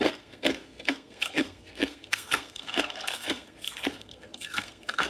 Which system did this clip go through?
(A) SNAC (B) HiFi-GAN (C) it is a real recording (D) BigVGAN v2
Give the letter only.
A